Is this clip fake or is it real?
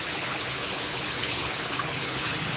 fake